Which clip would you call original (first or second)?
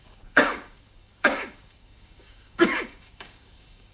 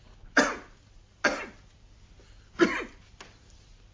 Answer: second